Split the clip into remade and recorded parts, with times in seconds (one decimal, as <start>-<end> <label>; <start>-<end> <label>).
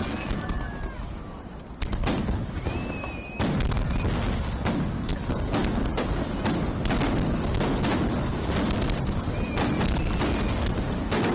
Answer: 0.0-11.3 recorded